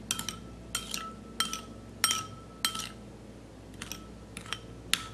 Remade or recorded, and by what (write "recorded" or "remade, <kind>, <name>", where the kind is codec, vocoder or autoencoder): recorded